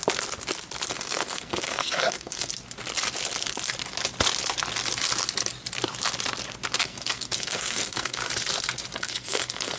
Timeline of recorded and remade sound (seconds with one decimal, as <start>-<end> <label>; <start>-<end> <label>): 0.0-0.9 recorded; 0.9-2.5 remade; 2.5-6.8 recorded; 6.8-8.2 remade; 8.2-9.0 recorded; 9.0-9.8 remade